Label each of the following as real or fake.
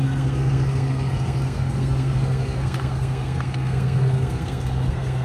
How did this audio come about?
fake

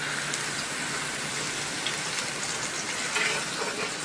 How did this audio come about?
real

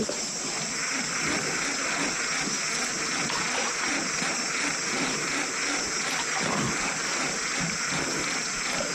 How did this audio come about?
real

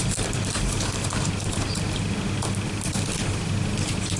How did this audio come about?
real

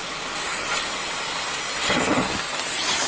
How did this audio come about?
real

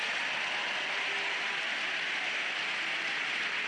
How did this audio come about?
real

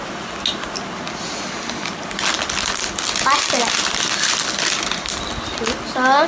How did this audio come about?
real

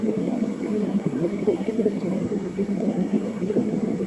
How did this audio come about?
fake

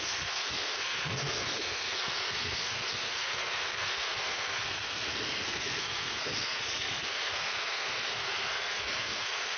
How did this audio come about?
fake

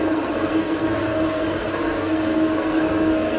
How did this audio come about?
fake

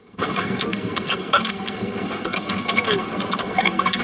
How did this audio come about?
fake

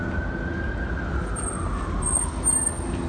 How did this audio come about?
real